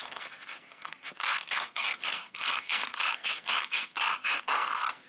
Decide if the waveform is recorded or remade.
remade